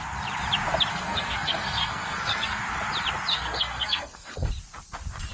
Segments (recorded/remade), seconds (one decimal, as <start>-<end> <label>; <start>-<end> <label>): 0.0-0.9 recorded; 0.9-2.6 remade; 2.6-3.3 recorded; 3.3-4.5 remade; 4.5-5.3 recorded